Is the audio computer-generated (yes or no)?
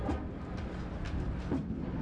no